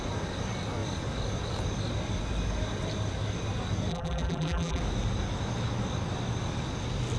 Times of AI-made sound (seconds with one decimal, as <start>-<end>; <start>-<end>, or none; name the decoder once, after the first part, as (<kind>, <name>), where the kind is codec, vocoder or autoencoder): 3.9-4.8 (vocoder, BigVGAN v2)